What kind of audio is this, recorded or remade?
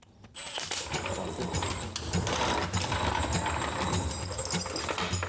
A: recorded